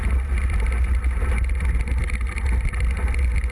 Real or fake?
real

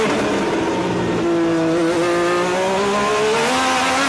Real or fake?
real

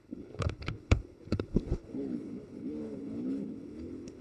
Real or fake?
fake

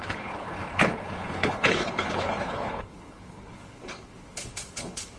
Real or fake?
fake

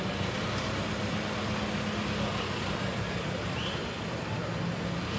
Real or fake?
real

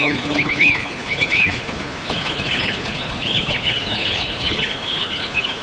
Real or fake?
fake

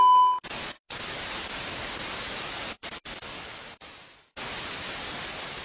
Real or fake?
real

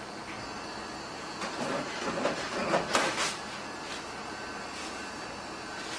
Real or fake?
real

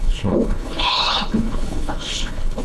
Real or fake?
fake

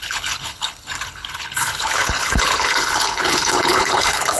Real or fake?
fake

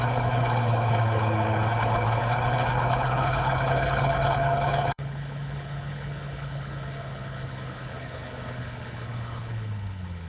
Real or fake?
fake